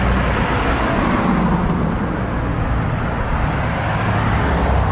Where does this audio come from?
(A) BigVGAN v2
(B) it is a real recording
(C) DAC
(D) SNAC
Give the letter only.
B